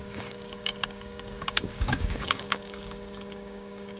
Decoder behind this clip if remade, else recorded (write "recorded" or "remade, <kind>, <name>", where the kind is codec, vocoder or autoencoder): remade, codec, DAC